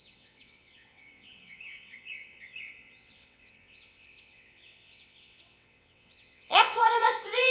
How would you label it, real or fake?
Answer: fake